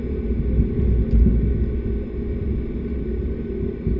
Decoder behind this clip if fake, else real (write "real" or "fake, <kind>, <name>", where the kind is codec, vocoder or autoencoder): real